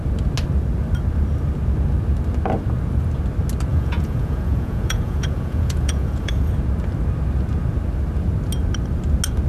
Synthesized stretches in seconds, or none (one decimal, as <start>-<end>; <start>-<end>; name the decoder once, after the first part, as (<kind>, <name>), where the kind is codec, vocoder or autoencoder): 3.7-6.5 (vocoder, Vocos)